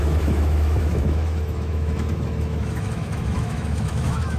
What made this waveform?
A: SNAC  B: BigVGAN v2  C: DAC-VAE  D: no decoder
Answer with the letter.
C